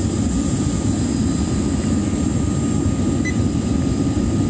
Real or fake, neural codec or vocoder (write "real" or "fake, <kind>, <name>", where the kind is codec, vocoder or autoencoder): real